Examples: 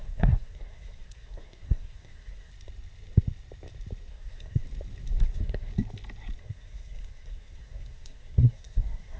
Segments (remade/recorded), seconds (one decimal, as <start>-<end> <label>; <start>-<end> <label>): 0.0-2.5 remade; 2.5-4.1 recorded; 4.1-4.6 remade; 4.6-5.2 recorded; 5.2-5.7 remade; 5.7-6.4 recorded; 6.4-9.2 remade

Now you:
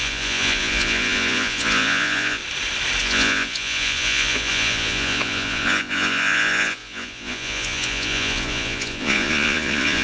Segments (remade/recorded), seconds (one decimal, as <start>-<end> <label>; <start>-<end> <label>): 0.0-2.4 remade; 2.4-3.0 recorded; 3.0-10.0 remade

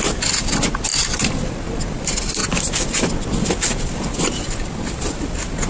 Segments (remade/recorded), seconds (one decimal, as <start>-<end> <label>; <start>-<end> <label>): 0.0-2.4 recorded; 2.4-5.3 remade; 5.3-5.7 recorded

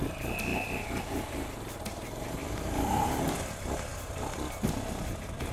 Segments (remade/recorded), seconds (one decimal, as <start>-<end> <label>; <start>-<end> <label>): 0.0-0.5 recorded; 0.5-3.5 remade; 3.5-5.5 recorded

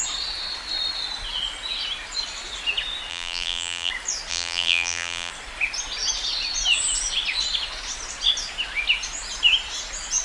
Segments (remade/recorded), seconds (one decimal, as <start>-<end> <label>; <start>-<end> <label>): 0.0-3.1 recorded; 3.1-3.9 remade; 3.9-4.3 recorded; 4.3-5.3 remade; 5.3-10.2 recorded